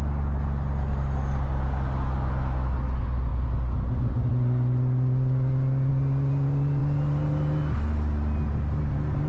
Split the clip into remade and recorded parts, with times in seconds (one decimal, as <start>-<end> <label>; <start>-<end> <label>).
0.0-9.3 recorded